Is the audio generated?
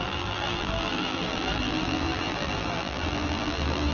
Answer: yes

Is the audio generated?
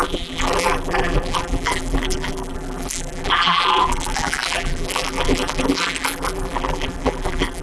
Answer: yes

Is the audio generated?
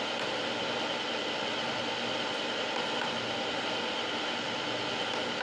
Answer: no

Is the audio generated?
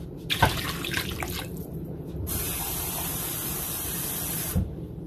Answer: yes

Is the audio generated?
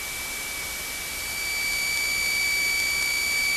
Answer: no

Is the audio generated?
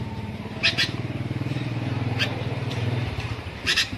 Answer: yes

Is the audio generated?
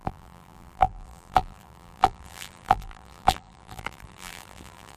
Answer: yes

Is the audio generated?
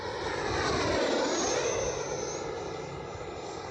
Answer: no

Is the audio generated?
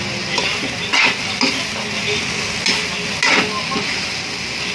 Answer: no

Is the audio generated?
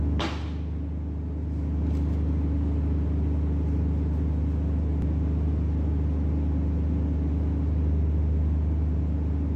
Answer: no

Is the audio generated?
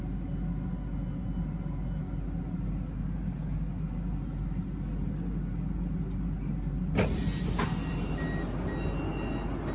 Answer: no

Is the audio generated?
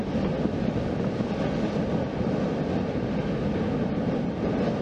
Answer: no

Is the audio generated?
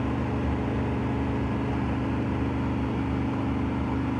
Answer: no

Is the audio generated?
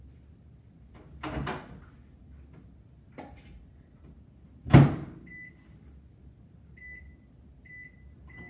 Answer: no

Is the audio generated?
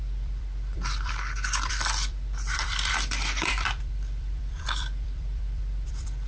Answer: yes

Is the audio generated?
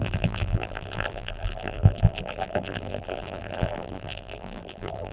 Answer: yes